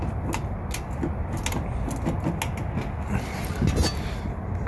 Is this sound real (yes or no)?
yes